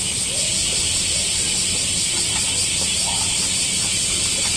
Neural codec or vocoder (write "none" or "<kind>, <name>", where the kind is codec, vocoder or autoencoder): none